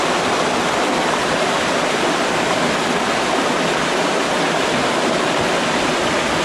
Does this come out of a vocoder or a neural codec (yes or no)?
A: no